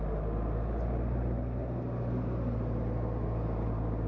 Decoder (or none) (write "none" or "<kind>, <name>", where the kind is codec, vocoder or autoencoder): none